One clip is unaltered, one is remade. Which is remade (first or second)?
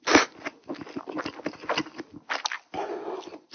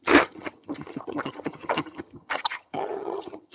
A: second